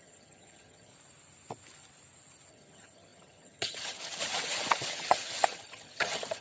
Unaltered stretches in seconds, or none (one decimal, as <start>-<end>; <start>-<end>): 0.9-2.5